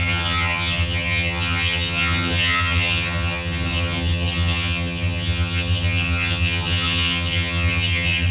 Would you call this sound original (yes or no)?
no